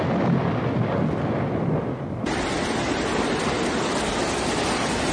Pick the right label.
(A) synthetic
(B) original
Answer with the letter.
B